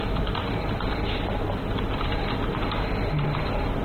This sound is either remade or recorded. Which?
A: recorded